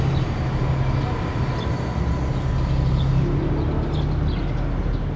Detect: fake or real real